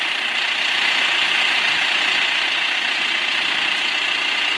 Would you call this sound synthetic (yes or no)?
no